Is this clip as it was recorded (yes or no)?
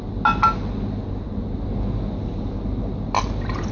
yes